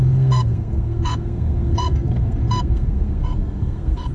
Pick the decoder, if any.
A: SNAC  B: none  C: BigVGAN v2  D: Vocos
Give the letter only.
A